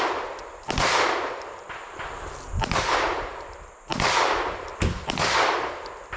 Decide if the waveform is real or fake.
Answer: real